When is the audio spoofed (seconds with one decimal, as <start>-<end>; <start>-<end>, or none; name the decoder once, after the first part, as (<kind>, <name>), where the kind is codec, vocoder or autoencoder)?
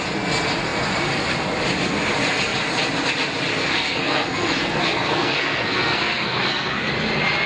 3.5-6.9 (codec, SNAC)